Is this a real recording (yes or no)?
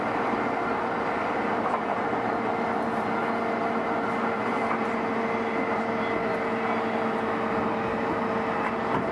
yes